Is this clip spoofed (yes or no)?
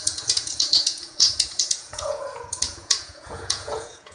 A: yes